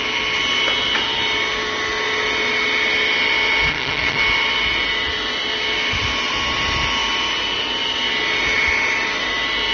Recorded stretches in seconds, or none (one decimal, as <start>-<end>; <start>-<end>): 0.0-3.7; 4.2-9.7